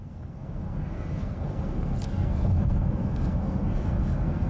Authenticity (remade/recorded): remade